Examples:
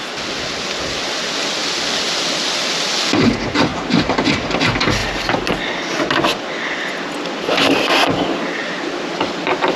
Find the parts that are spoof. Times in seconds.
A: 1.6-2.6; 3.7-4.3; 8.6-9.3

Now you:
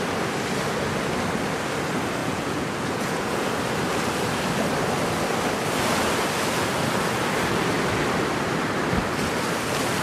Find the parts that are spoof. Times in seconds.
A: 2.2-3.5

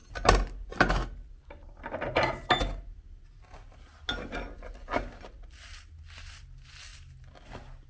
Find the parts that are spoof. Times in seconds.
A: none

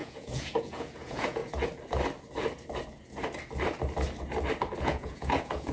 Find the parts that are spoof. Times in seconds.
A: 0.0-1.4; 4.8-5.7

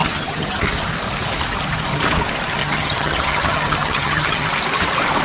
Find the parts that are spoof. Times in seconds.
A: 0.0-0.6; 2.6-4.5

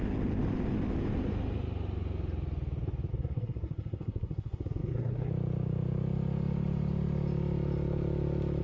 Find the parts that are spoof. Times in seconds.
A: 3.1-5.3

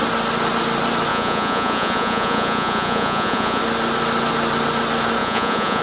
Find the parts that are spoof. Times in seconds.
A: 1.1-3.6; 5.2-5.8

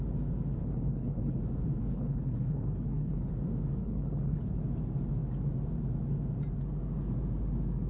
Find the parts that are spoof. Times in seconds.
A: 0.6-1.4; 1.8-3.3; 3.8-4.6